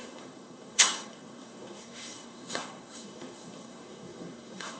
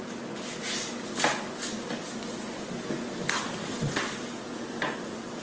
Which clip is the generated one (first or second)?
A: first